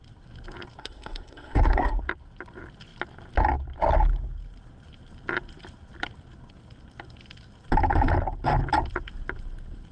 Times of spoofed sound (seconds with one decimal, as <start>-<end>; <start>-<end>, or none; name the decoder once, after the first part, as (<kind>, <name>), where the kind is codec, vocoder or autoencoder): 0.8-2.0 (codec, SNAC)